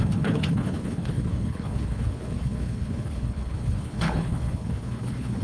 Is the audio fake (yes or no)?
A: yes